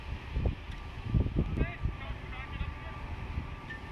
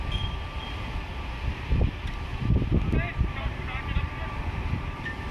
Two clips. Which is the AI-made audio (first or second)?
second